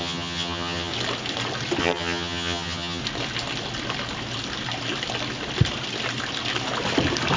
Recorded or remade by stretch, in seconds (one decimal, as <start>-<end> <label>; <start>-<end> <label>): 0.0-0.9 remade; 0.9-1.8 recorded; 1.8-3.0 remade; 3.0-7.4 recorded